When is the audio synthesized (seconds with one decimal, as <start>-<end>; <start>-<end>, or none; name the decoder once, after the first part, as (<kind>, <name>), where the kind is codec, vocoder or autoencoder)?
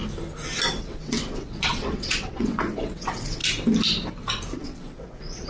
0.7-3.4 (vocoder, WaveNeXt); 4.6-5.5